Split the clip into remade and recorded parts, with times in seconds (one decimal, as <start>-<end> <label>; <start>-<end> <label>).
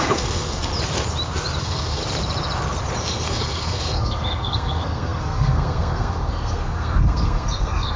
0.0-0.7 remade; 0.7-1.6 recorded; 1.6-2.0 remade; 2.0-3.0 recorded; 3.0-8.0 remade